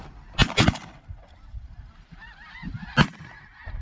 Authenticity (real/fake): real